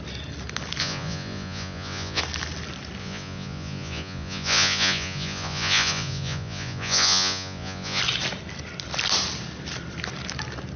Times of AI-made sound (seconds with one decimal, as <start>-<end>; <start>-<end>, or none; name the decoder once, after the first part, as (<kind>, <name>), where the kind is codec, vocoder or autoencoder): 0.8-2.2 (vocoder, Vocos); 3.0-8.0